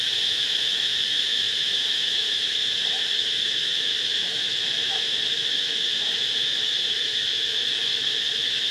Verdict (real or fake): fake